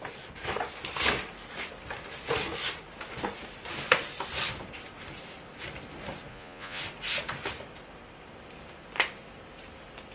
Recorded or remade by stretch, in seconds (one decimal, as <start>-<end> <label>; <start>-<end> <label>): 0.0-6.3 recorded; 6.3-6.8 remade; 6.8-10.1 recorded